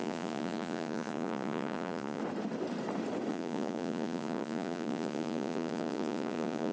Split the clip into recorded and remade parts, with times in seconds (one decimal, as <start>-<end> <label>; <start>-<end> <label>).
0.0-2.2 remade; 2.2-3.3 recorded; 3.3-6.7 remade